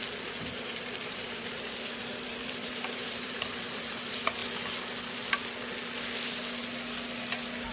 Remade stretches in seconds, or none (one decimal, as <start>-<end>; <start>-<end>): 0.6-4.4